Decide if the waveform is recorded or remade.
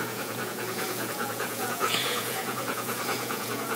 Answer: remade